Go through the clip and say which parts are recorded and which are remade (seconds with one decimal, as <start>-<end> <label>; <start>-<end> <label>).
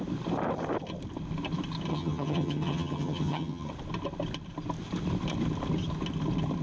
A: 0.0-1.9 recorded; 1.9-3.7 remade; 3.7-6.6 recorded